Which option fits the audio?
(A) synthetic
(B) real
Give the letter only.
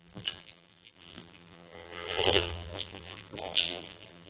A